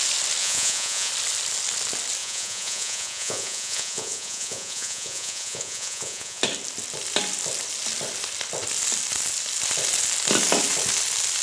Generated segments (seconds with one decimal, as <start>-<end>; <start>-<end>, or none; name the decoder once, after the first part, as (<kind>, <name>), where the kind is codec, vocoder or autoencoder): 0.4-1.1 (vocoder, Vocos); 2.2-6.4